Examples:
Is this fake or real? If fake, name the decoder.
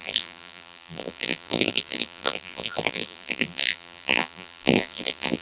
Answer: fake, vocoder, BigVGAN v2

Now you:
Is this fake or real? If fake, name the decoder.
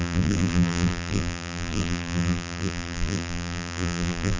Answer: fake, vocoder, BigVGAN v2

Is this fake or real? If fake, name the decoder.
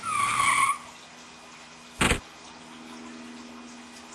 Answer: real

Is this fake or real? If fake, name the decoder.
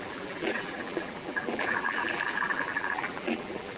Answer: fake, vocoder, BigVGAN v2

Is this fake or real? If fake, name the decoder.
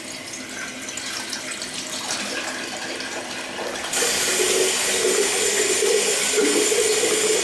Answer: real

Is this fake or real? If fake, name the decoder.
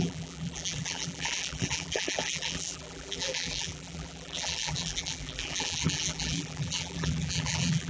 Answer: fake, vocoder, BigVGAN v2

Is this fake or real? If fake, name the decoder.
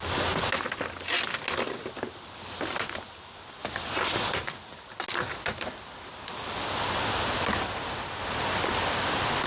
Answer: real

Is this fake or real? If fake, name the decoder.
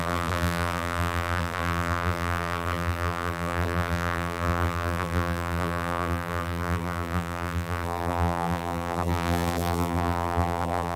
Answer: fake, vocoder, BigVGAN v2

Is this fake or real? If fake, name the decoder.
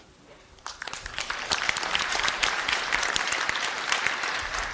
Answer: fake, vocoder, BigVGAN v2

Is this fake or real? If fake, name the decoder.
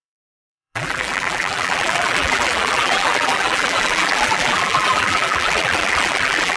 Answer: fake, vocoder, BigVGAN v2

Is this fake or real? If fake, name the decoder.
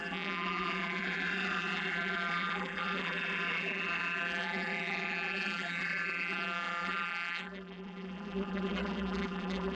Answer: fake, vocoder, BigVGAN v2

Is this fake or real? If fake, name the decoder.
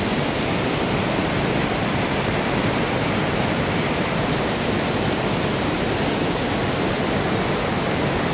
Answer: fake, vocoder, BigVGAN v2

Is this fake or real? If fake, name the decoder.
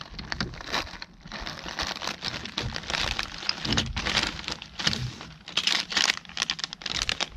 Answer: real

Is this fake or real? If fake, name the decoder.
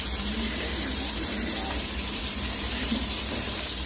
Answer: fake, vocoder, BigVGAN v2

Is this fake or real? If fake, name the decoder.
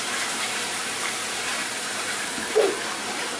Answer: fake, vocoder, BigVGAN v2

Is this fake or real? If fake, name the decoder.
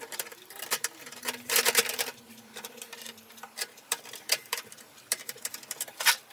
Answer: fake, vocoder, BigVGAN v2